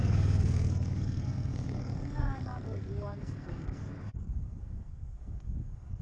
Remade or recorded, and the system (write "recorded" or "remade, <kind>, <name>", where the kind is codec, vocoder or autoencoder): remade, codec, SNAC